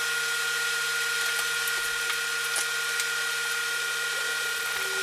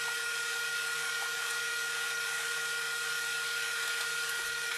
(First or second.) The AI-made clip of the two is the second